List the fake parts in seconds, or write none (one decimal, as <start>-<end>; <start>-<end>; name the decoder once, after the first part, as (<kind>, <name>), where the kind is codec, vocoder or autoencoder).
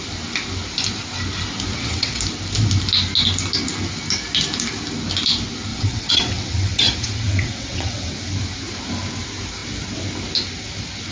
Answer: 1.7-2.2 (vocoder, WaveNeXt); 5.7-8.1